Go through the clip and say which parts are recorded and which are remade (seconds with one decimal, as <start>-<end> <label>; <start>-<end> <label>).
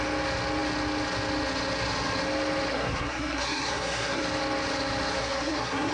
0.0-2.7 recorded; 2.7-4.2 remade; 4.2-5.2 recorded; 5.2-5.9 remade